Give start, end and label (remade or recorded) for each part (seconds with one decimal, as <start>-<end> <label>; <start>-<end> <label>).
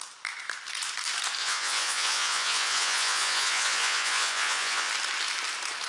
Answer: 0.0-1.4 recorded; 1.4-4.9 remade; 4.9-5.9 recorded